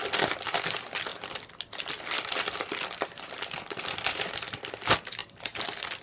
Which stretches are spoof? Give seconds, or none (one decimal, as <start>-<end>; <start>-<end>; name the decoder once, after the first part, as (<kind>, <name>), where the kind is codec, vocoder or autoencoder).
1.1-4.7 (vocoder, BigVGAN v2); 5.2-6.0

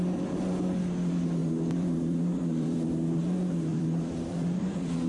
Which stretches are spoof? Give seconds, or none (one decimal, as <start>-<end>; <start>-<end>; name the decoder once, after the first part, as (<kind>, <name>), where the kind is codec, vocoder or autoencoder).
1.4-3.2 (vocoder, BigVGAN v2); 3.7-5.1